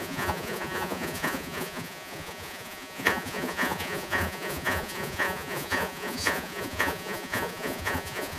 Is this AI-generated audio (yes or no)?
yes